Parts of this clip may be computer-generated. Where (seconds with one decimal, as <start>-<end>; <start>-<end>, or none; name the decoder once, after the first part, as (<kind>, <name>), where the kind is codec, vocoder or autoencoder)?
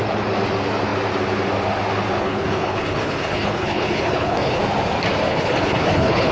2.2-4.6 (codec, HILCodec); 5.3-6.3